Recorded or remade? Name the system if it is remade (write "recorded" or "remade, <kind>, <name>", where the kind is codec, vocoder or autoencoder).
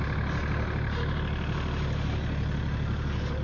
recorded